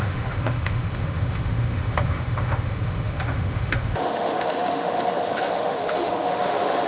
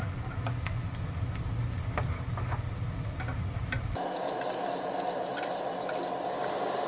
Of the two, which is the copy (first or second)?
first